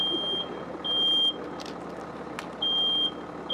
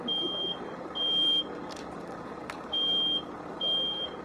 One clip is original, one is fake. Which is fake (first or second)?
second